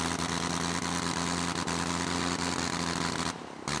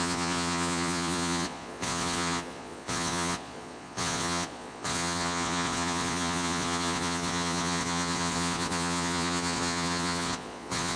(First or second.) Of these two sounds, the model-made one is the second